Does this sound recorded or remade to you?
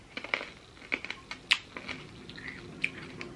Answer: recorded